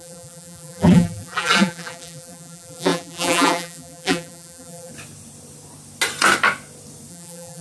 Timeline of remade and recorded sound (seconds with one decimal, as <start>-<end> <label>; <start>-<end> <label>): 0.0-4.9 remade; 4.9-7.1 recorded; 7.1-7.6 remade